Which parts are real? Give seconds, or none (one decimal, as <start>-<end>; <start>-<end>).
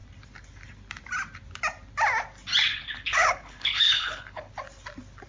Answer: 0.0-2.7; 4.5-5.3